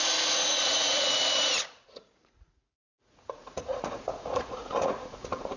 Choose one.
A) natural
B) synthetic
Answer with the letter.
B